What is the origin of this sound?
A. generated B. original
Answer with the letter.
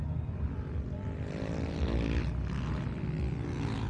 B